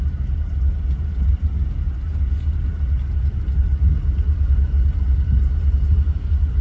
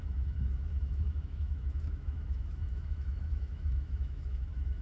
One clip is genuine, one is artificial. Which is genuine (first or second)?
first